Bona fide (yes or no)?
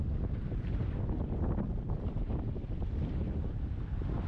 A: yes